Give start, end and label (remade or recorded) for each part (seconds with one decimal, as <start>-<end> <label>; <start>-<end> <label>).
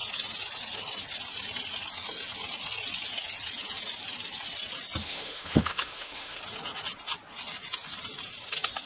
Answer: 0.0-5.0 recorded; 5.0-6.4 remade; 6.4-8.9 recorded